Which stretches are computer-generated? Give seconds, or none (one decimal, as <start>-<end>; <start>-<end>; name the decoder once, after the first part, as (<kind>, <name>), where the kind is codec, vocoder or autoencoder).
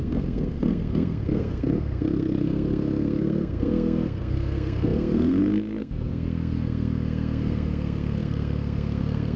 0.0-9.4 (codec, SNAC)